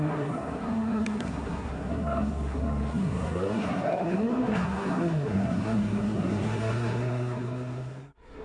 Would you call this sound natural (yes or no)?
no